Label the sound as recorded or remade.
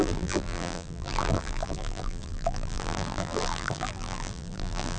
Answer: remade